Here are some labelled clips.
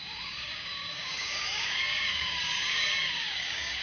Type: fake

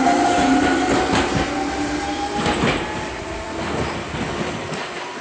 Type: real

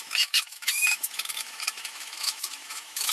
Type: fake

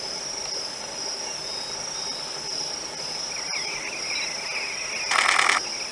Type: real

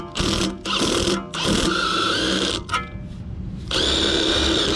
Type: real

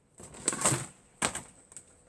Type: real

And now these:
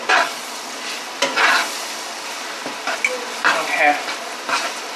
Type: real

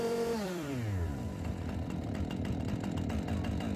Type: fake